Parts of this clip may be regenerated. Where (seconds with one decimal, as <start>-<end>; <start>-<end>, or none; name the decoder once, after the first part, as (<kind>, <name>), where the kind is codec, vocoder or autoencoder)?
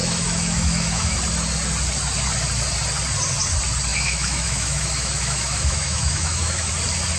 0.0-1.2 (autoencoder, DAC-VAE); 3.9-6.7